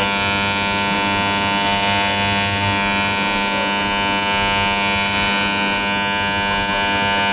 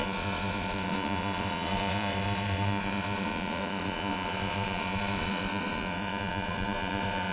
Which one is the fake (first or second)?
second